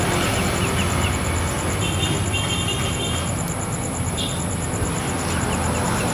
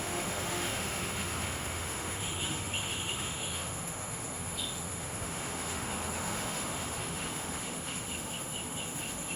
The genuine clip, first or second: first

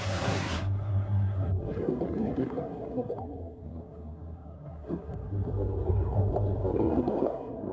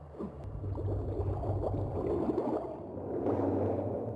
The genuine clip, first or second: second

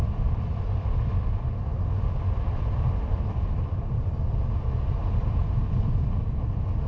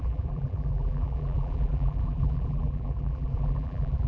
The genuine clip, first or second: first